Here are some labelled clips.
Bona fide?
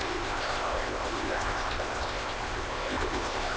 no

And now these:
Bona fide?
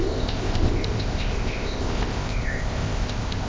no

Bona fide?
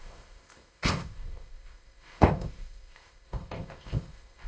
no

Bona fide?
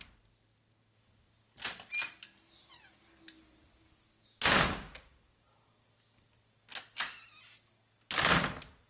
yes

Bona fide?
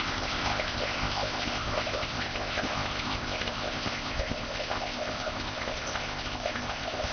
no